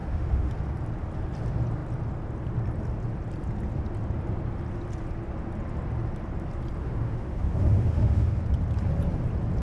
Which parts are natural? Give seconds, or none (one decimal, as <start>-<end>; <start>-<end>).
0.5-6.8; 8.4-9.6

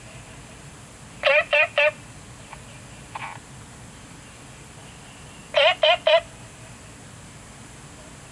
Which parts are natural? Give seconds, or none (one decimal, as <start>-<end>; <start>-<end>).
0.0-8.3

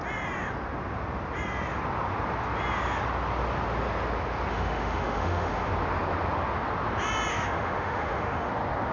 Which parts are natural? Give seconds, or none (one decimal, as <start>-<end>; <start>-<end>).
0.0-4.5; 5.7-7.3; 8.5-8.9

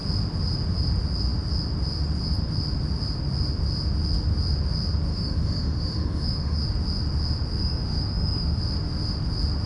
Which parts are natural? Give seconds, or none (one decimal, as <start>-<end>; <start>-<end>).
0.0-5.1; 6.6-7.6; 8.6-9.7

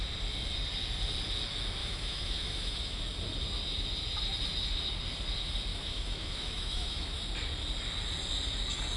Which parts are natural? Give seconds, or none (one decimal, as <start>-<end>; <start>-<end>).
0.0-1.8; 3.0-5.7; 7.2-9.0

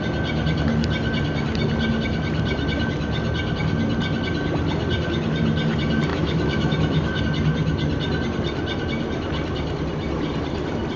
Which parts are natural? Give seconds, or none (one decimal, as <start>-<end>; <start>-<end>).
0.0-6.1; 7.2-11.0

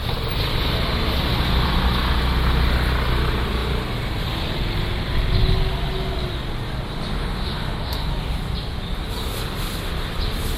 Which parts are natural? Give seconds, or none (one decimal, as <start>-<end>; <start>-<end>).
0.0-7.2; 8.1-10.6